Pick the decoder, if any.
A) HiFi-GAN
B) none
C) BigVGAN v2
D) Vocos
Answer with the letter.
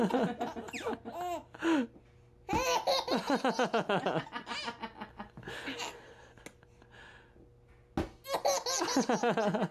B